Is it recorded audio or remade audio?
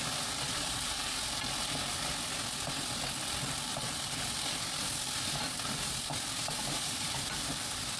recorded